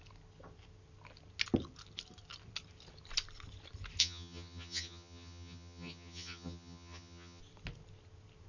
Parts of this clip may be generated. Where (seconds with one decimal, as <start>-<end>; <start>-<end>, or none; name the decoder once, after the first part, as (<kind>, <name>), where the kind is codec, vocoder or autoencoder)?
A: 4.0-7.4 (vocoder, HiFi-GAN)